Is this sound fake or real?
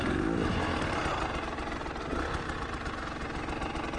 real